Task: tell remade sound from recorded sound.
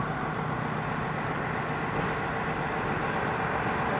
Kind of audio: recorded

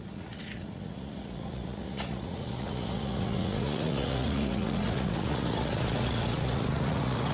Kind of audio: remade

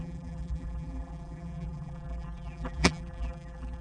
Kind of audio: remade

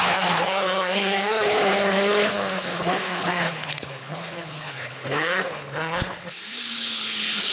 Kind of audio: remade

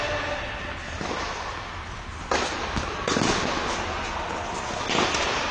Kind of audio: recorded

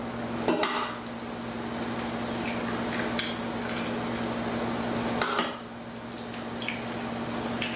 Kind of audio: recorded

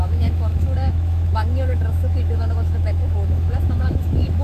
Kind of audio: remade